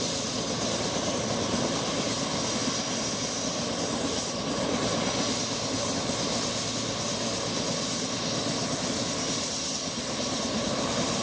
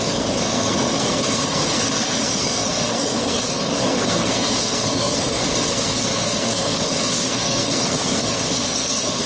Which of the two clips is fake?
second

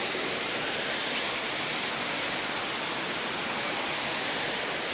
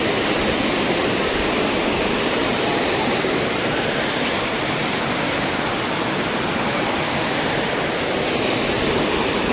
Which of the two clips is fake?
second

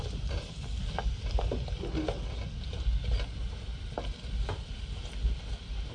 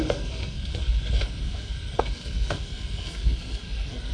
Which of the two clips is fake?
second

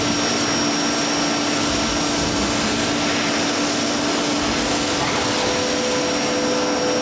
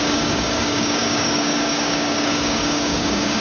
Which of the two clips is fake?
second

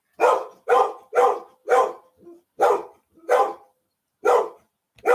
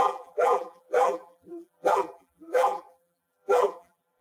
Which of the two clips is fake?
second